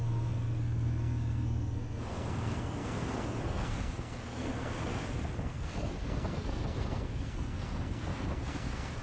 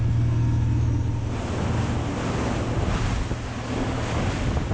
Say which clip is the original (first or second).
second